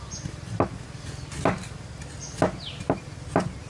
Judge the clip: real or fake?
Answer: real